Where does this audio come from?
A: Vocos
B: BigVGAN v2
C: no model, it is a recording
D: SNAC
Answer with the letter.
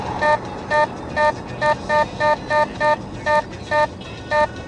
C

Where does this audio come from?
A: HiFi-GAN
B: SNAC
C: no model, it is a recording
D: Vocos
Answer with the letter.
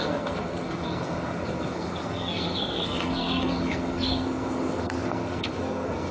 B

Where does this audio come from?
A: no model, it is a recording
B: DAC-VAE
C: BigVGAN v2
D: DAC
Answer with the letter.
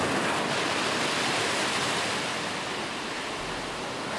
A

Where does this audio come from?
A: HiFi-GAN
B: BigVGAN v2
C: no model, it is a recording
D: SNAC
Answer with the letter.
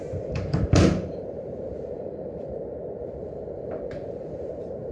B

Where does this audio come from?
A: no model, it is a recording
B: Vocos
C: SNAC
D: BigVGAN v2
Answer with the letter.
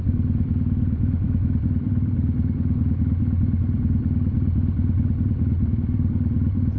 D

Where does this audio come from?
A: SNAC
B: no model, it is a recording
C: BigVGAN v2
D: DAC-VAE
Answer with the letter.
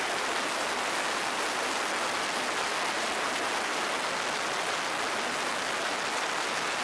B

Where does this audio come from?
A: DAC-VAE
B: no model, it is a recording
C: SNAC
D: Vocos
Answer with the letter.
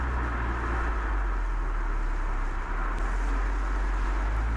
B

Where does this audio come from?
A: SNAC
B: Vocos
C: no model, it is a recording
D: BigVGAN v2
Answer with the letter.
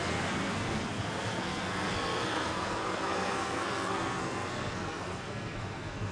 A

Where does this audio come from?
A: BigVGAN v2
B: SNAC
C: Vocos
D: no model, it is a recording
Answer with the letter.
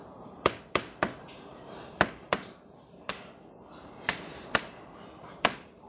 A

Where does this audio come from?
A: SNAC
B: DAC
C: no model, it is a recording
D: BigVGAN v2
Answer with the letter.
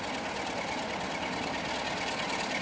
C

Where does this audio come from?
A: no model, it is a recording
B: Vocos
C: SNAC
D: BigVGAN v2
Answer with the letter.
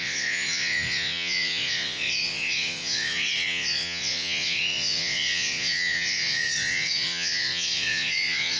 B